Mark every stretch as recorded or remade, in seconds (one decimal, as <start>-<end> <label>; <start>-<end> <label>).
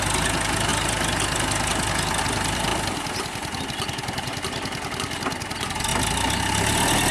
0.0-7.1 recorded